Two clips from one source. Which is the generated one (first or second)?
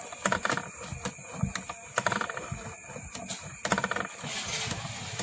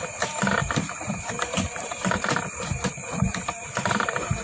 second